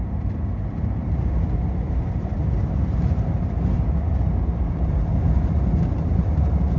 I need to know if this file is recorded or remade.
remade